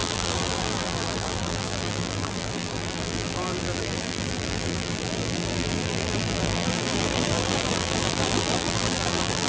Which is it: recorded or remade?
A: remade